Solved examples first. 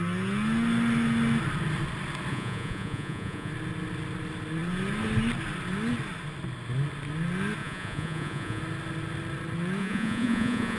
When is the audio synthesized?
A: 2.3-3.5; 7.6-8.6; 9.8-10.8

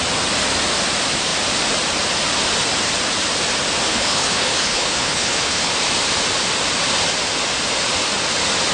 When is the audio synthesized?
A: 3.9-5.7

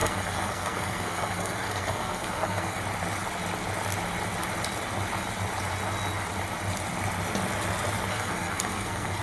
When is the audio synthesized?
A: 0.0-2.8; 8.1-9.2

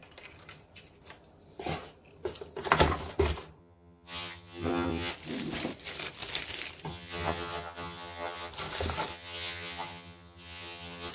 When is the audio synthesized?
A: 3.6-5.1; 6.9-8.5; 9.1-11.1

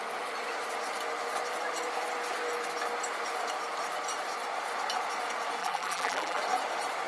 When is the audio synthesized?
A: 5.6-6.4